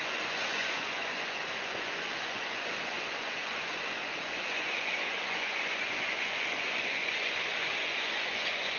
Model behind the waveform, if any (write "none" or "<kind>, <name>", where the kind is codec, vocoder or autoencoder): vocoder, Vocos